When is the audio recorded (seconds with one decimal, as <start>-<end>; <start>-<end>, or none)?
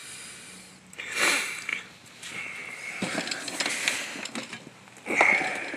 0.0-0.7; 1.7-5.2